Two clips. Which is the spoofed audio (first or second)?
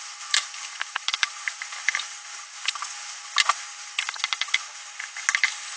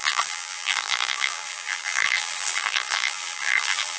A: second